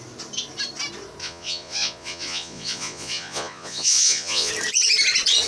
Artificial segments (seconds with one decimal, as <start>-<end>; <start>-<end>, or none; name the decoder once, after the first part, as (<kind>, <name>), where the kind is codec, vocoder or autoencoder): 1.2-4.5 (vocoder, Vocos)